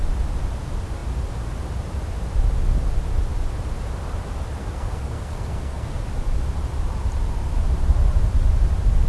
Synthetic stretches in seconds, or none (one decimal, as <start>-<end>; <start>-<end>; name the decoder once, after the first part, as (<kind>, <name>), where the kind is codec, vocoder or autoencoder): 4.6-6.0 (codec, SNAC)